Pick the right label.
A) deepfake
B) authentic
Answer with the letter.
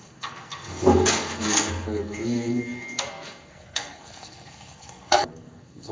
A